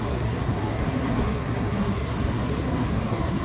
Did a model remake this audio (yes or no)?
yes